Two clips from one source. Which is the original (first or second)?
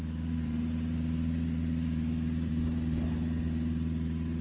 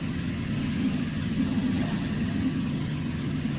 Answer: first